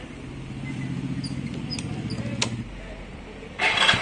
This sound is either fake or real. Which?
real